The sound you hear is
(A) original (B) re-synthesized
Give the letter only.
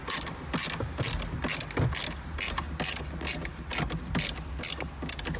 A